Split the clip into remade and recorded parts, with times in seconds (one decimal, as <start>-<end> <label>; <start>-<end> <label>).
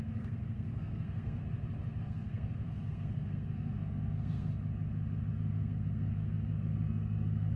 0.0-1.4 remade; 1.4-2.0 recorded; 2.0-4.5 remade; 4.5-5.3 recorded; 5.3-7.6 remade